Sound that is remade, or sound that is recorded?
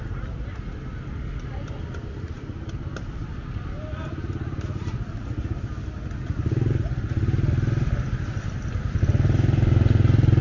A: recorded